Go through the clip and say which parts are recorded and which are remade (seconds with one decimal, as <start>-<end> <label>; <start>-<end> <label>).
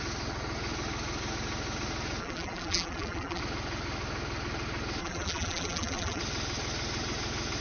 0.0-2.2 recorded; 2.2-3.4 remade; 3.4-5.0 recorded; 5.0-6.2 remade; 6.2-7.6 recorded